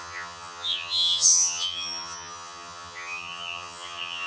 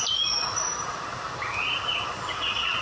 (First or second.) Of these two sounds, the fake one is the first